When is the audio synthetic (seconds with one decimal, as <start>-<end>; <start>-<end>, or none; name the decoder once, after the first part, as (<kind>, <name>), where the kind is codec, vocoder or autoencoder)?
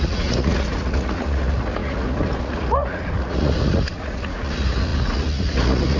0.0-6.0 (vocoder, Vocos)